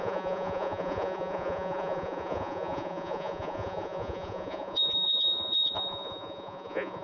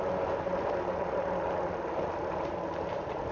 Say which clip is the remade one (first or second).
first